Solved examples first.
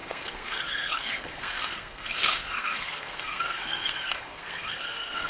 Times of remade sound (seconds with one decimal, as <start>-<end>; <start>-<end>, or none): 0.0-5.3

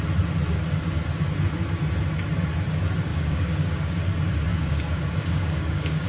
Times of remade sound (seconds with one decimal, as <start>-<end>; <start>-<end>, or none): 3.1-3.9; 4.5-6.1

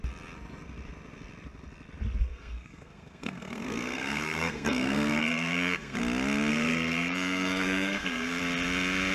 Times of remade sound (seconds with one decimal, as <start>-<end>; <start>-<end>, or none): 2.2-6.0; 6.5-8.4

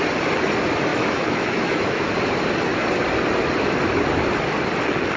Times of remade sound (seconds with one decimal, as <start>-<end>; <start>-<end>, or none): 0.9-2.1

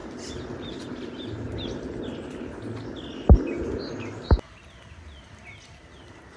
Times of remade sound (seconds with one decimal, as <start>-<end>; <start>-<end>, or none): none

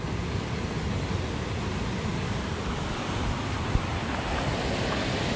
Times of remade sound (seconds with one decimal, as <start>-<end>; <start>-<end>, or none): 2.1-5.4

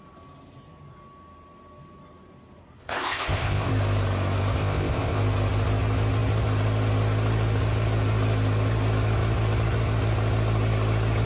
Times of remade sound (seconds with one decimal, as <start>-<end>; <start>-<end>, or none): 2.8-3.7; 4.6-5.2